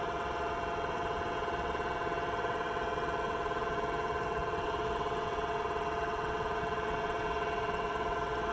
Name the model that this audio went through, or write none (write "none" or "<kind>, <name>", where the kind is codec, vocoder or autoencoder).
vocoder, WaveNeXt